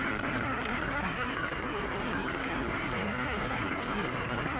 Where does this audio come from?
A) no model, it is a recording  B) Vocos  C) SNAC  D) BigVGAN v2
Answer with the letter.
C